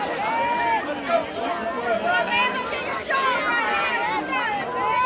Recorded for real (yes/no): yes